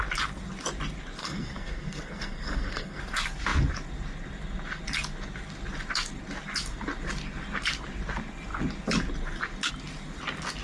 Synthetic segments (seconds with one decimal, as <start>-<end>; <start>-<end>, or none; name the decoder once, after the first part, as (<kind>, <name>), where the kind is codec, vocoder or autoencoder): 1.2-3.0 (codec, SNAC)